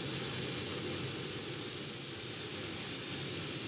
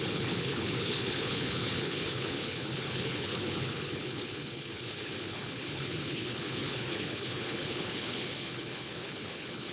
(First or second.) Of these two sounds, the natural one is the first